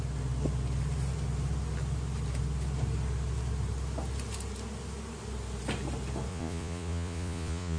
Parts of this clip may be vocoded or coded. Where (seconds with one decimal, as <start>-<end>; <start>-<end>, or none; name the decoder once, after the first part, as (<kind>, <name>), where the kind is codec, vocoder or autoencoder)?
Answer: 6.3-7.8 (vocoder, Vocos)